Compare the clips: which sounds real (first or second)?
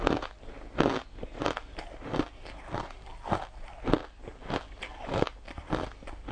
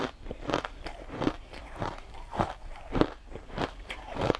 first